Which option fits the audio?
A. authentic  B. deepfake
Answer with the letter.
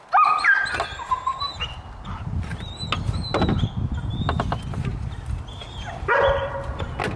A